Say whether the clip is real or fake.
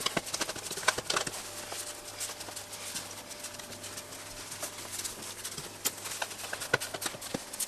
real